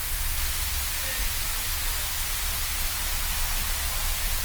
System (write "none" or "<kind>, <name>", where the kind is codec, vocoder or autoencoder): none